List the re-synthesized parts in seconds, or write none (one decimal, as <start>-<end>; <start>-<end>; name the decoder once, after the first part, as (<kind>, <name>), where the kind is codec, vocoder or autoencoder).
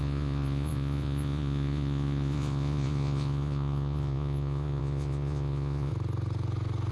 0.0-5.9 (vocoder, Vocos)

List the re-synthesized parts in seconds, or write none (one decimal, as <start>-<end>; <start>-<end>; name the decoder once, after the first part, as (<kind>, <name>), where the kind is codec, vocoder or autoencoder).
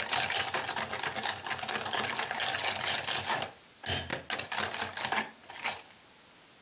none